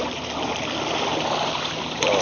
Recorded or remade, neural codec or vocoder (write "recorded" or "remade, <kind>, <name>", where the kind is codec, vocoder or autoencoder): recorded